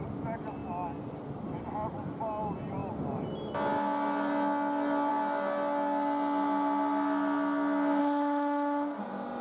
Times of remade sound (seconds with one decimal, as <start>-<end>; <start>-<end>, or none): 8.0-9.0